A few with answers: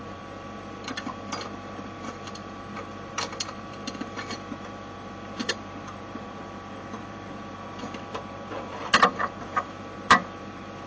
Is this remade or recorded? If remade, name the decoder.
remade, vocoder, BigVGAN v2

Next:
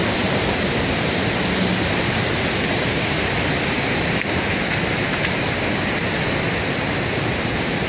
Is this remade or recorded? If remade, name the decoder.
recorded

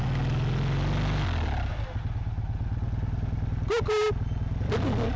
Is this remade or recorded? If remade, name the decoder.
recorded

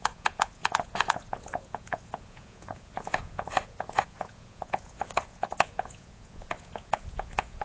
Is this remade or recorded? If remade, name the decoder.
remade, vocoder, Vocos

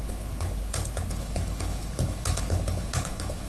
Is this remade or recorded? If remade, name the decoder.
remade, codec, HILCodec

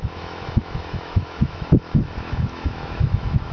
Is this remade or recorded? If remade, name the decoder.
remade, autoencoder, DAC-VAE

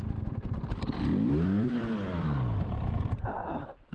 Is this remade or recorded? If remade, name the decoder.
remade, vocoder, BigVGAN v2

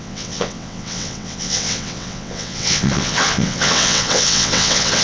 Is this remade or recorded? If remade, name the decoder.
remade, vocoder, WaveNeXt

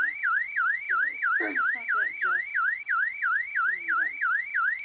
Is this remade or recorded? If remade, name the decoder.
recorded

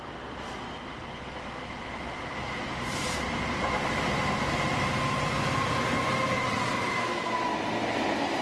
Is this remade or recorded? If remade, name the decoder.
recorded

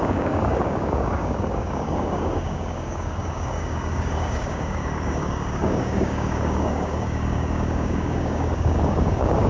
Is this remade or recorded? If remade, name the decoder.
remade, codec, DAC